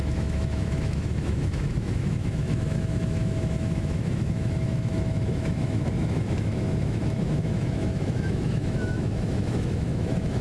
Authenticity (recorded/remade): remade